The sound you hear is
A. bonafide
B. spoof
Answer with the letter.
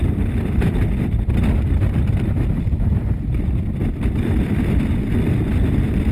B